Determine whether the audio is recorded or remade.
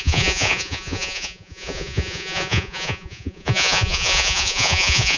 remade